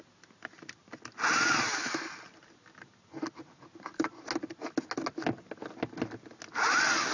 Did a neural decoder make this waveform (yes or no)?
no